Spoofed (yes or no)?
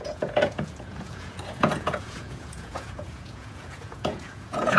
yes